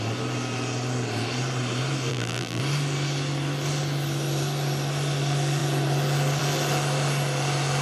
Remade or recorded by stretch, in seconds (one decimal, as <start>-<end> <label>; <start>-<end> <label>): 0.0-2.1 recorded; 2.1-2.6 remade; 2.6-7.8 recorded